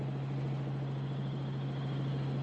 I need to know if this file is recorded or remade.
recorded